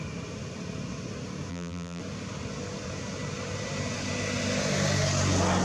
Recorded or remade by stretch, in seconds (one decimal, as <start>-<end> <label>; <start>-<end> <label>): 0.0-1.5 recorded; 1.5-2.0 remade; 2.0-5.6 recorded